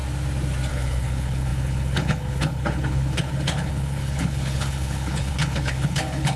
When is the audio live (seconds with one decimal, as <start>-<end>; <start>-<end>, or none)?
0.0-0.7